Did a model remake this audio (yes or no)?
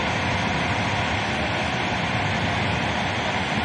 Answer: no